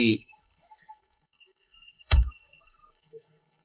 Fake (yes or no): yes